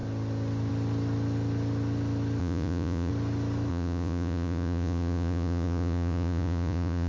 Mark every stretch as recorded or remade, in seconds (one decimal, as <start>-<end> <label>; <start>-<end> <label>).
0.0-2.4 recorded; 2.4-3.1 remade; 3.1-3.7 recorded; 3.7-7.1 remade